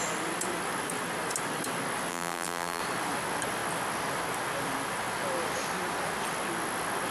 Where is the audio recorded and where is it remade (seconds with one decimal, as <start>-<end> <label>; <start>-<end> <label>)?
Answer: 0.0-2.1 recorded; 2.1-2.8 remade; 2.8-7.1 recorded